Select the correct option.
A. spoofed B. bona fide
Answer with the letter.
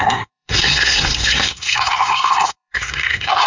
A